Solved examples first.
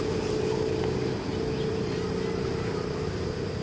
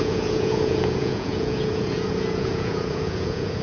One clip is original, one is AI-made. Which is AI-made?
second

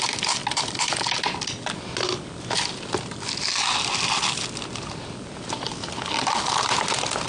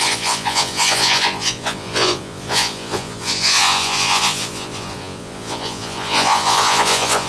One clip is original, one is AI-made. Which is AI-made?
second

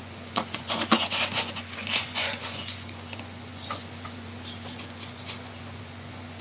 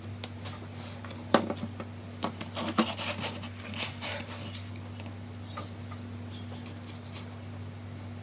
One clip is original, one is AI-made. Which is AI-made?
first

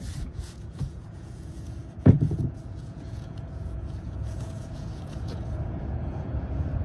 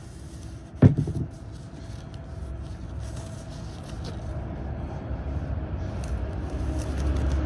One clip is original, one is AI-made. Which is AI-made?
first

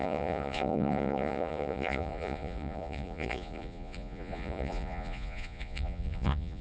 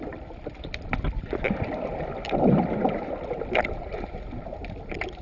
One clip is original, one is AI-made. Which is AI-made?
first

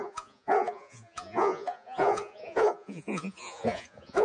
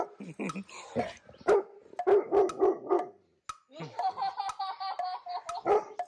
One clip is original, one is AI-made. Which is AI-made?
first